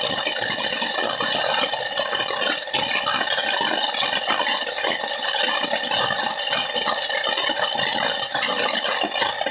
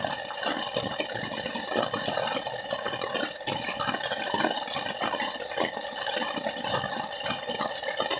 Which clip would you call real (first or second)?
first